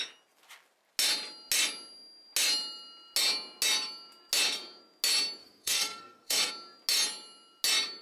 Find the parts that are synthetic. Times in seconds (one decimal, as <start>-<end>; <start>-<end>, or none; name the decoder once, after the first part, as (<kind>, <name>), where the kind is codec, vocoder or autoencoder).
5.4-6.5 (codec, SNAC)